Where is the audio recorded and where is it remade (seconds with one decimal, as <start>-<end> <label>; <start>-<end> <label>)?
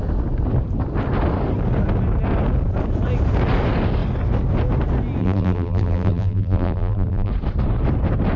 0.0-5.2 recorded; 5.2-7.3 remade; 7.3-8.4 recorded